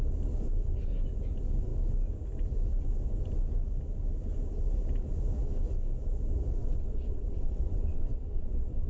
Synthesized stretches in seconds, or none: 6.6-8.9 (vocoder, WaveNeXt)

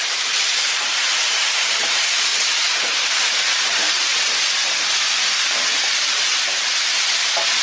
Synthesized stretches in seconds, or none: 0.0-2.3 (vocoder, BigVGAN v2); 2.8-4.1; 5.5-6.9

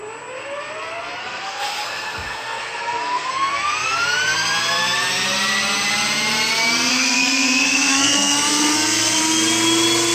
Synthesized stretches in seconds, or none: 1.2-3.3 (codec, SNAC); 6.9-9.2